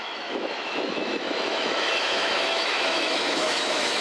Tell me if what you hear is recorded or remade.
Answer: remade